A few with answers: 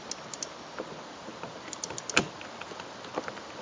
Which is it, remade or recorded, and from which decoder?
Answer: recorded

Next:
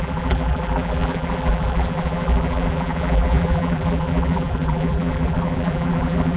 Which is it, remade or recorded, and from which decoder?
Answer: remade, vocoder, BigVGAN v2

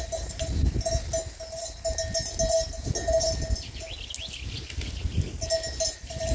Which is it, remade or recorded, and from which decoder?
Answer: recorded